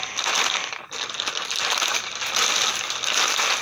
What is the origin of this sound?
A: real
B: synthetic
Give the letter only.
A